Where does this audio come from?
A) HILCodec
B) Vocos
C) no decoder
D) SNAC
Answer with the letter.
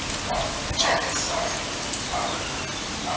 C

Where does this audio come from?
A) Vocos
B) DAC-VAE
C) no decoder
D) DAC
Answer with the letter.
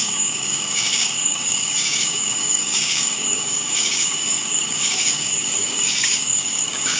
D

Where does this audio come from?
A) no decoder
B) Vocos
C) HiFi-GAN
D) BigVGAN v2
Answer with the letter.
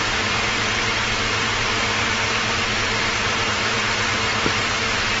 D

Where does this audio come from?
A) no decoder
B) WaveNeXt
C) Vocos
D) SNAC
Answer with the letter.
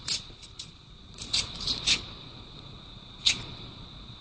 C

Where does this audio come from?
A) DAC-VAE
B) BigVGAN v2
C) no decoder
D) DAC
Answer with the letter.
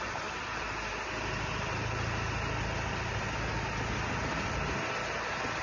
C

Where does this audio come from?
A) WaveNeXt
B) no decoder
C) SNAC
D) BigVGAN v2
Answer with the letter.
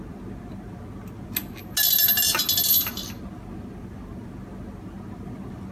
B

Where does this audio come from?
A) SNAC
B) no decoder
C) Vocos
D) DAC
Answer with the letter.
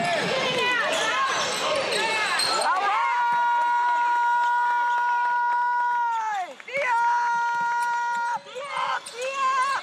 B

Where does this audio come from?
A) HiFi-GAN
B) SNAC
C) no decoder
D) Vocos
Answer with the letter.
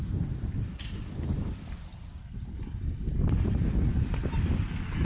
C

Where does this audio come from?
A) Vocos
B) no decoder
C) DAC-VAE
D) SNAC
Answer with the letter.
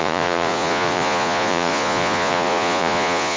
A